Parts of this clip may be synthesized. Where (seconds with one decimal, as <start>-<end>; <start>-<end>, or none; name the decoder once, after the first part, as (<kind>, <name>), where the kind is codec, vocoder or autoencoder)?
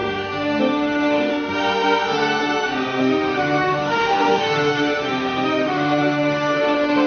0.6-1.3 (autoencoder, DAC-VAE); 3.0-7.1